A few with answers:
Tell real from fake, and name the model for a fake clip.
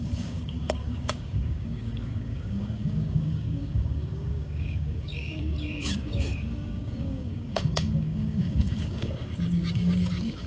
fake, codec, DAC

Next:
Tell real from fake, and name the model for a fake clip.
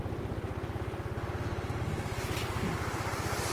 real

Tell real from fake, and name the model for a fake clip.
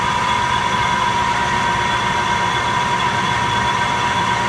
fake, vocoder, BigVGAN v2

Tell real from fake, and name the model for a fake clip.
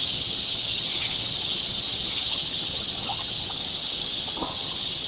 fake, vocoder, HiFi-GAN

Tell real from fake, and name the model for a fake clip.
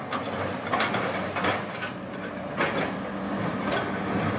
real